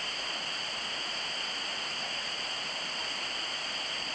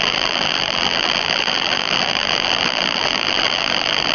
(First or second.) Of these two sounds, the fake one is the second